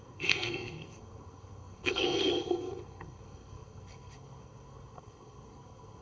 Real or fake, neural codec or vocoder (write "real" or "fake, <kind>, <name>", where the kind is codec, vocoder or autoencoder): fake, codec, SNAC